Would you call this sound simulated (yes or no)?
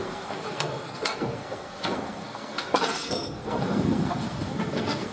yes